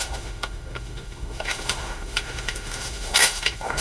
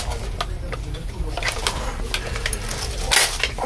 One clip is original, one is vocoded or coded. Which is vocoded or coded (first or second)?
first